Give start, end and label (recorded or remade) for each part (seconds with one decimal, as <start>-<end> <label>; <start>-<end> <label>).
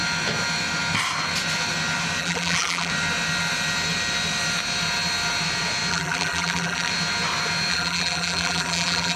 0.0-2.2 recorded; 2.2-2.9 remade; 2.9-5.9 recorded; 5.9-6.9 remade; 6.9-7.7 recorded; 7.7-9.2 remade